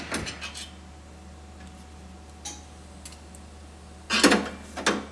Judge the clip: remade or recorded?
recorded